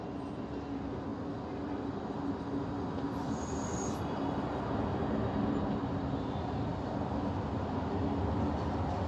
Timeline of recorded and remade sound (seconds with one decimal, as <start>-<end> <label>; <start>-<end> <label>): 0.0-9.1 recorded